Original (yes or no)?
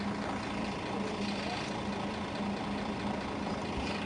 yes